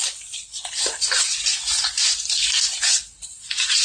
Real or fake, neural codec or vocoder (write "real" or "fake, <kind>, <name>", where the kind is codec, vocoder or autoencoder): real